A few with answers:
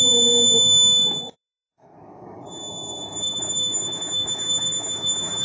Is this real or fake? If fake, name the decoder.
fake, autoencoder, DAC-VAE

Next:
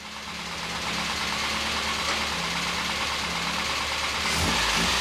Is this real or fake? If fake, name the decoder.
real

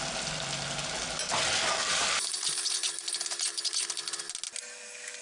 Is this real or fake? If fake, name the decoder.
real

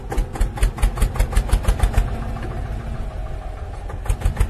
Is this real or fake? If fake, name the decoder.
real